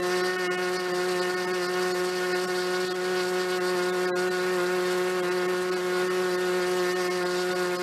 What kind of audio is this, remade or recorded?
recorded